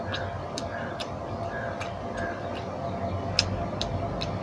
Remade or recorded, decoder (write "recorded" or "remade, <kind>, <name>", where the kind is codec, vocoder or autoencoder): recorded